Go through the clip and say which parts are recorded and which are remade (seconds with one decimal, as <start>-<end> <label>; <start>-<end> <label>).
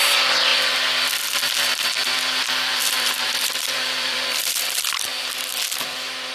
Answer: 0.0-2.7 recorded; 2.7-4.6 remade; 4.6-6.3 recorded